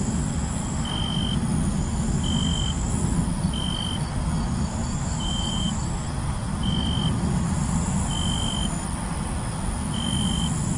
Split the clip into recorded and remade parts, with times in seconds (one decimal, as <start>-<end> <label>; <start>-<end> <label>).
0.0-4.8 recorded; 4.8-6.7 remade; 6.7-10.8 recorded